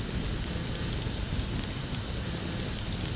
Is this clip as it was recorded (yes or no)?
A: yes